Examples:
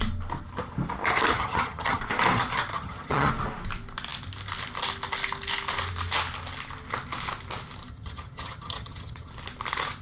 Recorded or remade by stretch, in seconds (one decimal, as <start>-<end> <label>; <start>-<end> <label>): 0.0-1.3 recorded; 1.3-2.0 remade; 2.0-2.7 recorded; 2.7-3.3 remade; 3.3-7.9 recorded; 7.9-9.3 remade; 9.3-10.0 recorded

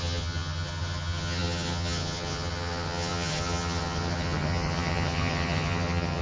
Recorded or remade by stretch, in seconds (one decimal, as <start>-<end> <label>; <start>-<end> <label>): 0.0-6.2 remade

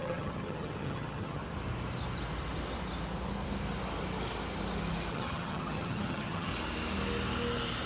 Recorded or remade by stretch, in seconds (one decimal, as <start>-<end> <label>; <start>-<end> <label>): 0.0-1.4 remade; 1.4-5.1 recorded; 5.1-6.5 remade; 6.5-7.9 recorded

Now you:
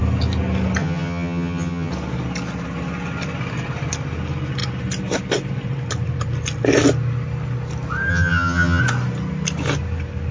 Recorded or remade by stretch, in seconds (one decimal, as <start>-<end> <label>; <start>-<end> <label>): 0.0-0.8 recorded; 0.8-1.9 remade; 1.9-8.1 recorded; 8.1-8.8 remade; 8.8-10.3 recorded